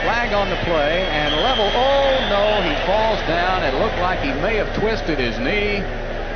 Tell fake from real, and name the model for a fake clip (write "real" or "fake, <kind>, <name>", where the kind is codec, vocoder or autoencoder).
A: real